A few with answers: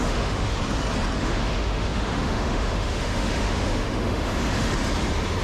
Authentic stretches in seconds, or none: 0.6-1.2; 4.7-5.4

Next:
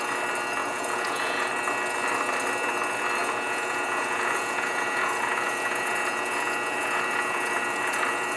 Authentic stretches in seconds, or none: 0.0-0.6; 1.5-3.2